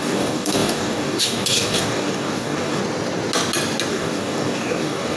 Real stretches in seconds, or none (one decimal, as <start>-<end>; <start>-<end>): 2.8-3.9